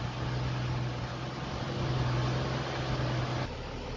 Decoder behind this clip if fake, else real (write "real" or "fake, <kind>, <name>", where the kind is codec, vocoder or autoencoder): real